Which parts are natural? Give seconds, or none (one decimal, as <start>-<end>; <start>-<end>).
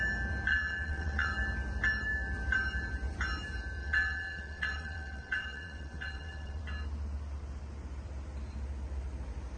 0.0-0.5; 1.3-3.8; 6.6-9.6